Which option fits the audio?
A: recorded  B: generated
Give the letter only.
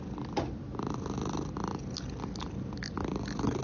A